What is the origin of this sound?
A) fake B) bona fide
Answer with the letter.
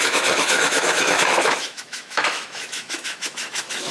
A